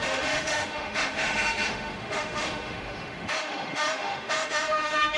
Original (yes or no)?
no